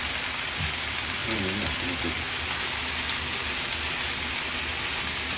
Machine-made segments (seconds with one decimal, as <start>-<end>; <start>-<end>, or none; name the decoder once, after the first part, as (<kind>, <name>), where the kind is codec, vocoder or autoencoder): none